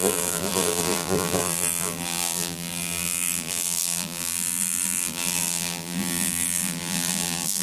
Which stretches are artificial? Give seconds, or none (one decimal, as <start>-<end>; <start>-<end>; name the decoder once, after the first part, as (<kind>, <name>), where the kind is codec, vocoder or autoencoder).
0.0-7.6 (vocoder, BigVGAN v2)